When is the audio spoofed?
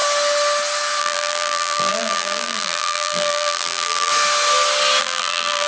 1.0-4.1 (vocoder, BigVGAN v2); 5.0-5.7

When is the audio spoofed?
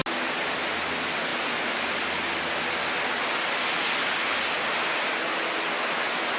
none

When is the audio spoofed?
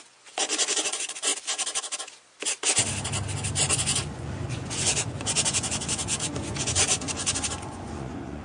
0.0-1.3 (vocoder, Vocos); 3.7-8.4